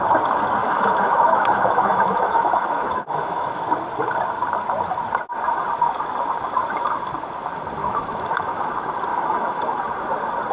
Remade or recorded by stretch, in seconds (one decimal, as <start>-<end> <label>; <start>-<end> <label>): 0.0-0.6 recorded; 0.6-3.6 remade; 3.6-7.8 recorded; 7.8-8.7 remade; 8.7-9.1 recorded; 9.1-9.8 remade; 9.8-10.5 recorded